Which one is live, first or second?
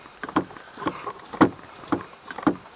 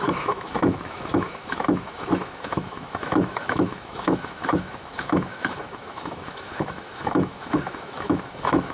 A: first